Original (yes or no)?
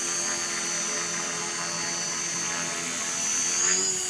yes